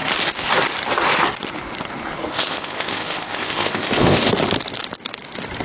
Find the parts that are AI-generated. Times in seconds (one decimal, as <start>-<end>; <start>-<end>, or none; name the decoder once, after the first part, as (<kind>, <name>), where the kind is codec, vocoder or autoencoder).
2.3-4.3 (codec, ZipCodec)